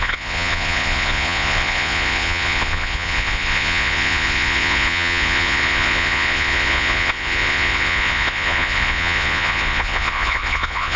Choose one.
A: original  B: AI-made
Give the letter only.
B